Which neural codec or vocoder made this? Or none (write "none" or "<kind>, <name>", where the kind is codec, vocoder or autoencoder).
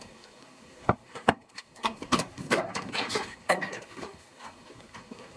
codec, SNAC